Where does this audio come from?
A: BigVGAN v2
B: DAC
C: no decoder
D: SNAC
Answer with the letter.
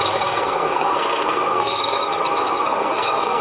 D